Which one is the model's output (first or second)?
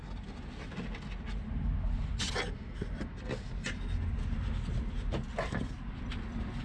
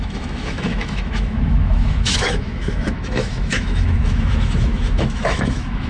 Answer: second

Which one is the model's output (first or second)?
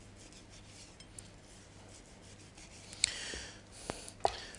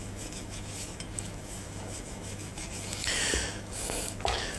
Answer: second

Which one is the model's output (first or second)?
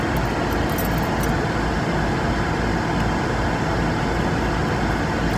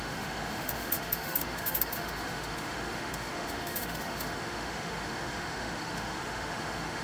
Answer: second